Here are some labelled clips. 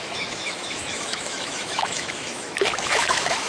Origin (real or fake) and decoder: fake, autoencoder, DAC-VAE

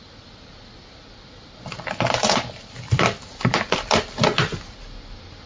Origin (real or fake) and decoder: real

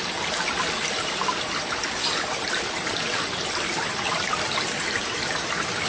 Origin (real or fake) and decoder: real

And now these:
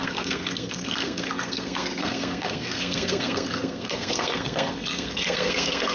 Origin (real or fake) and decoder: fake, codec, SNAC